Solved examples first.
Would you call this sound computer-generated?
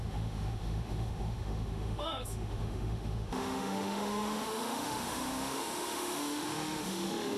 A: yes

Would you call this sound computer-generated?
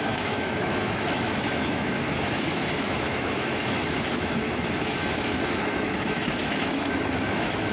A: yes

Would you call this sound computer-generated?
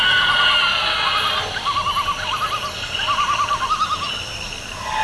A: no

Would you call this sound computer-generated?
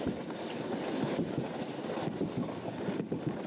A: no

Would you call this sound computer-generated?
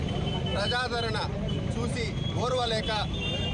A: no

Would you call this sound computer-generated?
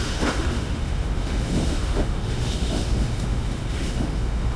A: yes